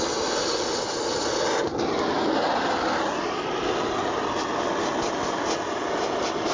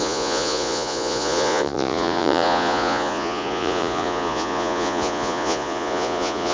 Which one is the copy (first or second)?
second